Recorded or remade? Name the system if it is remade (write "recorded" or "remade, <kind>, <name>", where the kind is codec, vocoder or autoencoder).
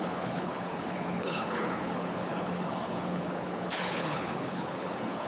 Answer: remade, codec, HILCodec